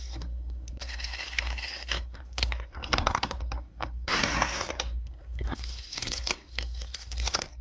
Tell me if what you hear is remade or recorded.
remade